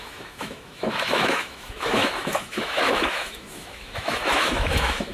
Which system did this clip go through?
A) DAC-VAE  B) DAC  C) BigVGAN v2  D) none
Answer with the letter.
A